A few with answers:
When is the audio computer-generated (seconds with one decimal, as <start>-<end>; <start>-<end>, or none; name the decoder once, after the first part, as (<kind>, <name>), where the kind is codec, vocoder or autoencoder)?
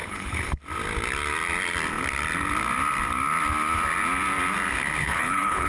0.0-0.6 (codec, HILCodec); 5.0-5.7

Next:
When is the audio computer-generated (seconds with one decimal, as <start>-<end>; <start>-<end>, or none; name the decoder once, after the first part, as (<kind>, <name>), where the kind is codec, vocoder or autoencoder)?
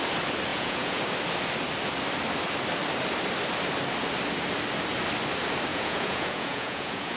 0.5-1.0 (vocoder, Vocos); 5.7-7.2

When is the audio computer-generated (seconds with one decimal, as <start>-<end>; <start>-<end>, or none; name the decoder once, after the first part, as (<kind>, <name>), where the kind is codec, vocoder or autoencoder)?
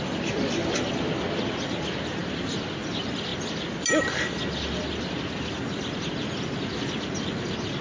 none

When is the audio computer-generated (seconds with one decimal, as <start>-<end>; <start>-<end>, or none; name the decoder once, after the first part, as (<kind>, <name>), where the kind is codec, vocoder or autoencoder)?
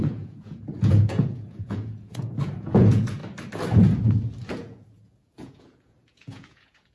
0.0-3.2 (vocoder, Vocos); 4.5-6.9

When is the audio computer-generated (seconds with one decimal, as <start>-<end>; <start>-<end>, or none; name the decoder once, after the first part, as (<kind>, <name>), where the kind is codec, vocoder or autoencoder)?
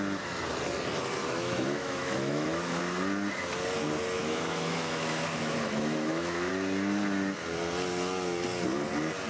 1.2-2.8 (autoencoder, DAC-VAE); 4.2-6.5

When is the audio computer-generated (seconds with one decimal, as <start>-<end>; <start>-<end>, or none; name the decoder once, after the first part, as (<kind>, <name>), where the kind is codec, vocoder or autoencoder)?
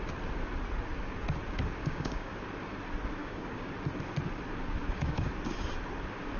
1.8-2.3 (codec, DAC); 3.2-3.7; 4.8-5.3